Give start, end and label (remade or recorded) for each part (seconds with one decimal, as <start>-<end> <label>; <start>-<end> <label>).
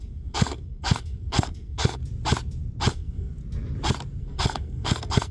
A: 0.0-2.0 remade; 2.0-2.9 recorded; 2.9-3.3 remade; 3.3-4.2 recorded; 4.2-5.3 remade